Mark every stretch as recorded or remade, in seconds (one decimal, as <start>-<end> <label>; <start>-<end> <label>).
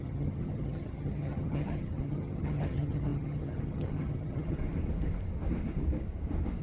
0.0-4.6 remade; 4.6-6.6 recorded